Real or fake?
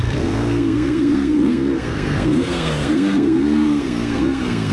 fake